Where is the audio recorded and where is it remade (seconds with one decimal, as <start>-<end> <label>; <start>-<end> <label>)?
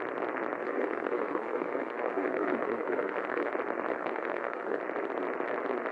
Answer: 0.0-0.6 recorded; 0.6-3.5 remade; 3.5-3.9 recorded; 3.9-4.8 remade; 4.8-5.9 recorded